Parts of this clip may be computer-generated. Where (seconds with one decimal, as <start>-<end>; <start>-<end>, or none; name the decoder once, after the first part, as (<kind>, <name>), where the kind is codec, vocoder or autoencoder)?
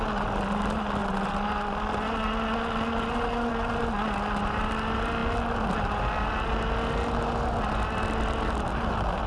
none